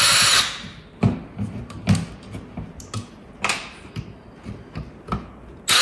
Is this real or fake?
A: real